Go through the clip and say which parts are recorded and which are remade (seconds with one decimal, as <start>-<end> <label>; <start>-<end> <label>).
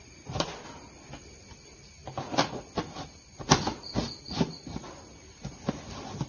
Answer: 0.0-6.3 recorded